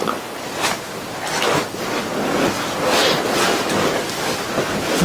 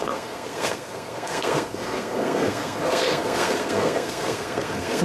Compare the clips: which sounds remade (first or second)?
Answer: second